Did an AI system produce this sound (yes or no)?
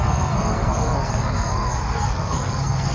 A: yes